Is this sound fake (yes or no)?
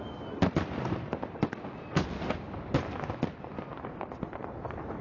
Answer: no